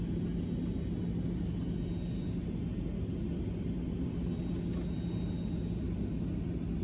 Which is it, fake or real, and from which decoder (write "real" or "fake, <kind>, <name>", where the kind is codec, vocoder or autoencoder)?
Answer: real